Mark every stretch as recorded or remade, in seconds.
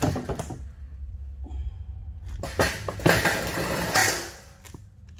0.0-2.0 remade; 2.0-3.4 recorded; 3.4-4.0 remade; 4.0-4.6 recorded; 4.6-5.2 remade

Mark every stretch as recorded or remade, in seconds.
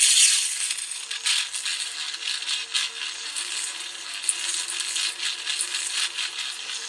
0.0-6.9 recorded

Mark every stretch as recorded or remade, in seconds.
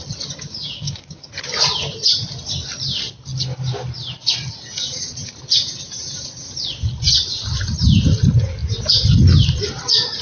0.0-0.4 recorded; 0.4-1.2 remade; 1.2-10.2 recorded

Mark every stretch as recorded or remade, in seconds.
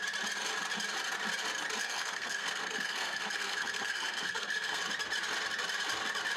0.0-1.8 recorded; 1.8-4.8 remade; 4.8-6.4 recorded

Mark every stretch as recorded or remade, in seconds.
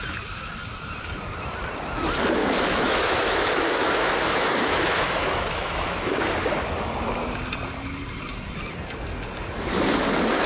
0.0-2.4 recorded; 2.4-6.2 remade; 6.2-10.5 recorded